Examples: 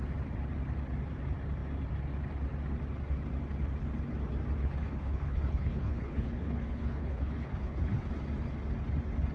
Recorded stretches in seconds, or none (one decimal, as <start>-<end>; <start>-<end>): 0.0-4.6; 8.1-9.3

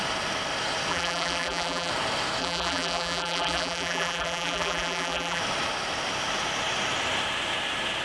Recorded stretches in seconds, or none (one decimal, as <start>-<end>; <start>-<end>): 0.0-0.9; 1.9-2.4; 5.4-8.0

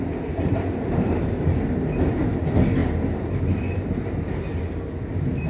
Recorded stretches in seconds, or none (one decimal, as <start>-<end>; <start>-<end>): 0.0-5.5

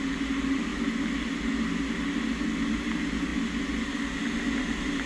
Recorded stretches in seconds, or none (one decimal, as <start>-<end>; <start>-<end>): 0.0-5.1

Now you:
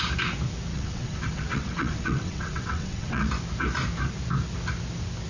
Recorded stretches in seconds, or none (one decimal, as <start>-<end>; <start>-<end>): 0.0-0.7; 3.3-5.3